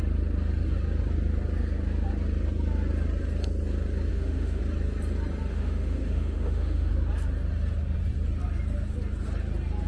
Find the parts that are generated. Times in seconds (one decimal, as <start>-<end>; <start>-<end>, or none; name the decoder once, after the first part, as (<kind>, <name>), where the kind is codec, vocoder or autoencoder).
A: 4.1-4.6 (autoencoder, DAC-VAE); 5.5-6.9